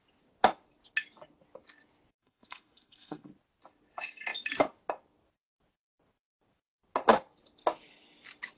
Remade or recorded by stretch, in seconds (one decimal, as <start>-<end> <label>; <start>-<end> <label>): 0.0-2.1 recorded; 2.1-3.3 remade; 3.3-8.6 recorded